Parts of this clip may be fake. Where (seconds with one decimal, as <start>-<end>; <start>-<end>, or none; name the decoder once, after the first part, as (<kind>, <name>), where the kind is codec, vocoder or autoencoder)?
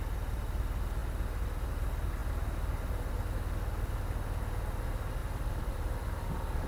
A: none